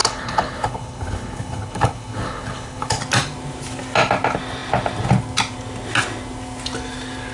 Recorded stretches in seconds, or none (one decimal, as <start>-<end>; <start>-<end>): 3.0-7.3